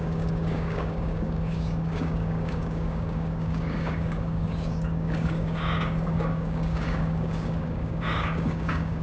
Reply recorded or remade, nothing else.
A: remade